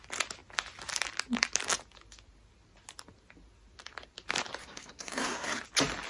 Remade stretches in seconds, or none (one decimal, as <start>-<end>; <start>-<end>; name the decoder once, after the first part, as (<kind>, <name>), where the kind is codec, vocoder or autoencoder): 4.6-5.6 (codec, SNAC)